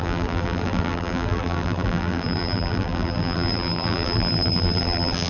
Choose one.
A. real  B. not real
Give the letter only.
B